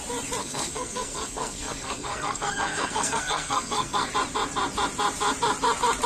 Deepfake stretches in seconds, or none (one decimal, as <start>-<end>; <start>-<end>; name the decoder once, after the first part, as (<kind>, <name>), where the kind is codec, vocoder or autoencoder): 0.4-4.1 (codec, SNAC)